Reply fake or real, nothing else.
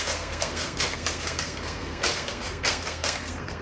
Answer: fake